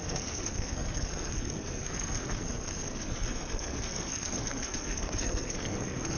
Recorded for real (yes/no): no